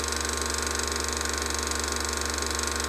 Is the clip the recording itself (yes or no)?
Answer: yes